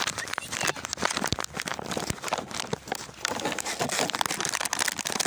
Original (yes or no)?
yes